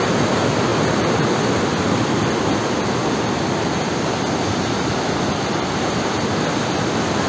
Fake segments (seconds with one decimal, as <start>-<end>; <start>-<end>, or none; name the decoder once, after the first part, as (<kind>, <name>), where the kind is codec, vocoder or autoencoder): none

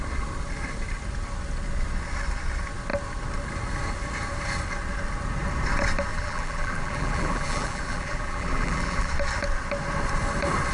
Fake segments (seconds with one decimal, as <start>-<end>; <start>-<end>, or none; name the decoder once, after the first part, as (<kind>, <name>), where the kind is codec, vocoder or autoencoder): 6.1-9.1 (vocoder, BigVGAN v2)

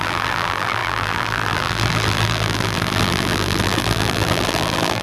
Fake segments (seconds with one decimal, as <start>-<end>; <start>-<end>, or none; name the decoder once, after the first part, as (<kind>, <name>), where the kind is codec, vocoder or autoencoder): 0.0-5.0 (vocoder, BigVGAN v2)

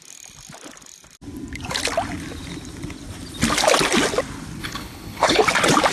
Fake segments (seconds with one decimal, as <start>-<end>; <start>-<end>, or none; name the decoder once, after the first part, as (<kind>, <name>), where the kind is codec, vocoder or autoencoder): 4.6-5.4 (codec, HILCodec)

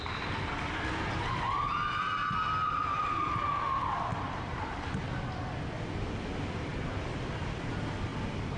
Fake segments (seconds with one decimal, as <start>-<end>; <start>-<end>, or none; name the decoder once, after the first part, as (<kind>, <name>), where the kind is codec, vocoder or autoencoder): 2.8-3.4 (vocoder, BigVGAN v2); 4.1-4.9; 6.7-7.7; 8.1-8.6

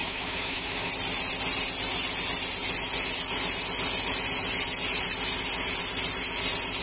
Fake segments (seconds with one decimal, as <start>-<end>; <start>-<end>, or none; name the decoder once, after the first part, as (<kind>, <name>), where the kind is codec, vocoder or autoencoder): 0.0-0.9 (autoencoder, DAC-VAE)